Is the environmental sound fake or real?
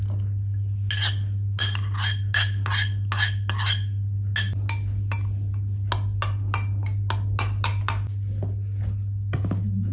real